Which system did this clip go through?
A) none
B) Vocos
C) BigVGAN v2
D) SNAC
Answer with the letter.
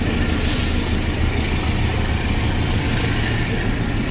A